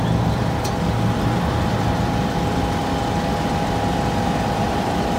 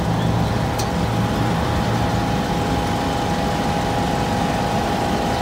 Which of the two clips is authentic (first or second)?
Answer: second